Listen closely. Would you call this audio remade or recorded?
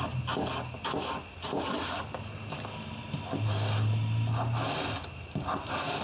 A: recorded